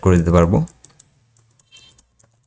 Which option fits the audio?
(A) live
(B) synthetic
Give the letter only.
A